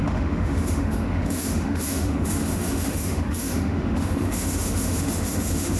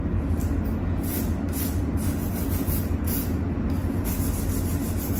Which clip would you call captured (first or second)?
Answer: second